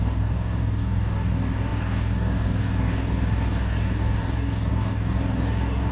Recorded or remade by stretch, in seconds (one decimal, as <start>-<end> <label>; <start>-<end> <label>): 0.0-5.9 remade